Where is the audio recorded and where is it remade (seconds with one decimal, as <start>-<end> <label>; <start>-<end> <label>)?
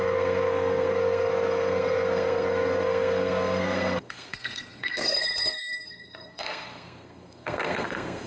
0.0-8.3 remade